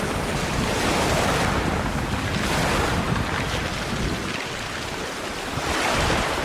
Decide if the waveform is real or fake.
real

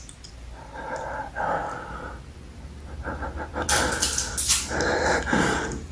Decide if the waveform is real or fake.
fake